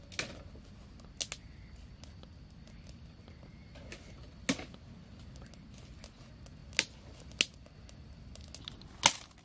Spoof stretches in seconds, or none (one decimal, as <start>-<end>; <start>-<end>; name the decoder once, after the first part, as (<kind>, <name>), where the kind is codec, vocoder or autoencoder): none